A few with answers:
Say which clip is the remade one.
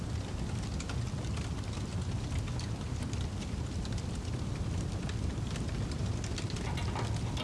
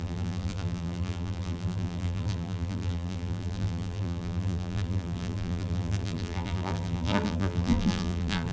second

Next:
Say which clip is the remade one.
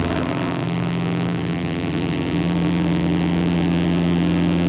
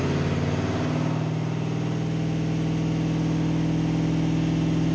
first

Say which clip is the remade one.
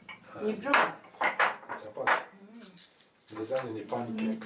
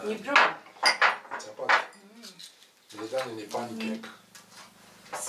first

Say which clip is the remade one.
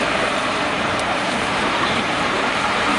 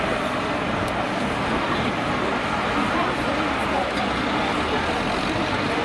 first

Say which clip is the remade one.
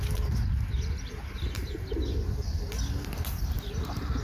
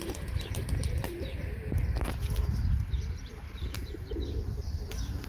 second